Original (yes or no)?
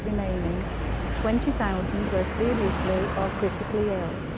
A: yes